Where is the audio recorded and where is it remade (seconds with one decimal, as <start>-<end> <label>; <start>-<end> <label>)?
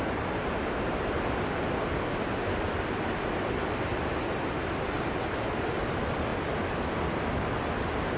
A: 0.0-8.2 recorded